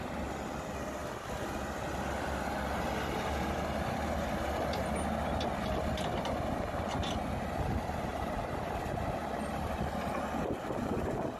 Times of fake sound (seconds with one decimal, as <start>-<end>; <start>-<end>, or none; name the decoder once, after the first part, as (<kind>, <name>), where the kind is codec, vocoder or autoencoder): 8.1-8.8 (vocoder, BigVGAN v2)